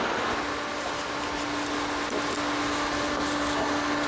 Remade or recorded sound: recorded